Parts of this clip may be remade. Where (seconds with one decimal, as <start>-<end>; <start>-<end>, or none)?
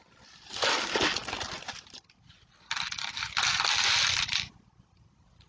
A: none